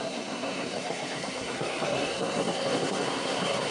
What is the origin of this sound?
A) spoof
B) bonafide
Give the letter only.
A